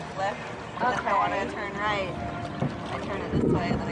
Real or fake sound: real